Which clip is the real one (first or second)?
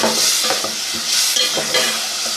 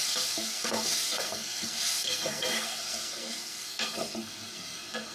first